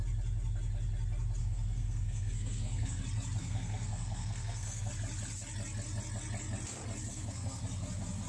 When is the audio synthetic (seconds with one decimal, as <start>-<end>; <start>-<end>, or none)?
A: 1.4-3.0; 3.4-4.9; 7.1-7.6